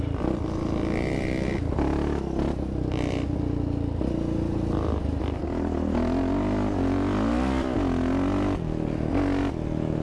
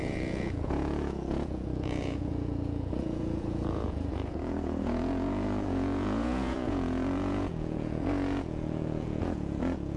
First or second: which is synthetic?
second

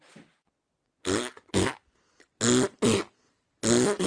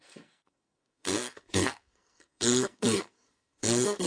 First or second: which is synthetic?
second